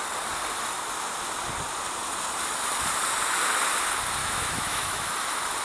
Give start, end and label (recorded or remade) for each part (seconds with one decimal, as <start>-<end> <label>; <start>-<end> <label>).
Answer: 0.0-4.2 recorded; 4.2-5.1 remade; 5.1-5.6 recorded